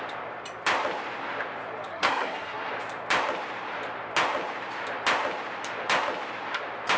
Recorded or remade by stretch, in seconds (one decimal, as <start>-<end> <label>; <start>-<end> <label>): 0.0-1.9 recorded; 1.9-2.7 remade; 2.7-7.0 recorded